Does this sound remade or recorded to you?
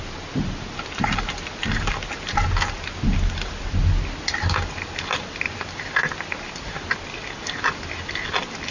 recorded